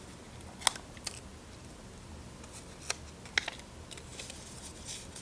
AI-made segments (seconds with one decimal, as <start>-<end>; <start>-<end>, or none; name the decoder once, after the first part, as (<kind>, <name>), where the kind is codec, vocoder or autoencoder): none